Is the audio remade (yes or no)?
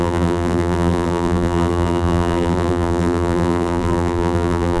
yes